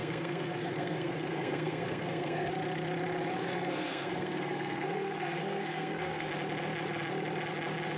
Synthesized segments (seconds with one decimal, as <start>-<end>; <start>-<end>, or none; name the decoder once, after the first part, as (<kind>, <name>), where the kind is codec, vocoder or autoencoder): 0.0-2.5 (codec, SNAC); 3.4-6.3